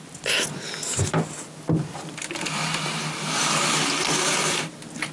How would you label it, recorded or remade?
recorded